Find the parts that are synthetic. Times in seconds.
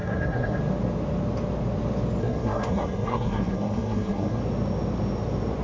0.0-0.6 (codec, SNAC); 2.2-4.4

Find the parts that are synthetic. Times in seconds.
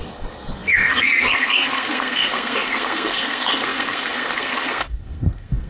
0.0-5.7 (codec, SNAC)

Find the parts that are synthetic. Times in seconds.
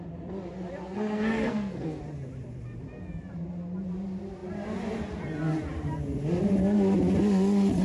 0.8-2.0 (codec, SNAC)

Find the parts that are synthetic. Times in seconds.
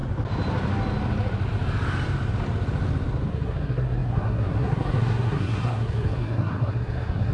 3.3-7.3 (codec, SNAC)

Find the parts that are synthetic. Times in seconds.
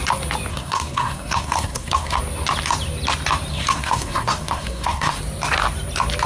0.5-2.2 (codec, SNAC); 3.5-5.2